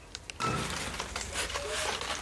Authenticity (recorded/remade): recorded